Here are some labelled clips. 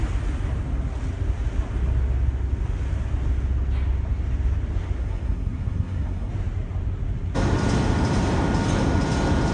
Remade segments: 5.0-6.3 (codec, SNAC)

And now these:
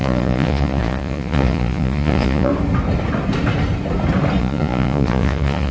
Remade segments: 0.0-2.5 (vocoder, Vocos); 4.4-5.7